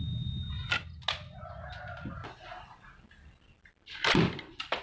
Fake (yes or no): no